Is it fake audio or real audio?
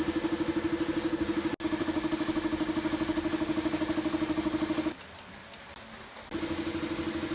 real